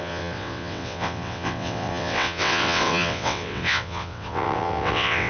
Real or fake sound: fake